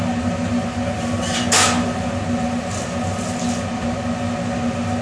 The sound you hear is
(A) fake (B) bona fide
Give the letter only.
B